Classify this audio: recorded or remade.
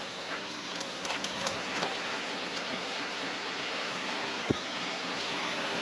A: remade